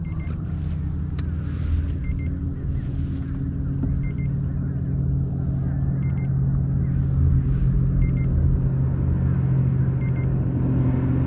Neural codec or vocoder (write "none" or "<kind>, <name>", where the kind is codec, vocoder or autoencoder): none